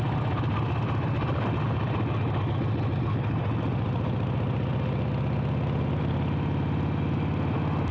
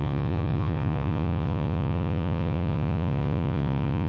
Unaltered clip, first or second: first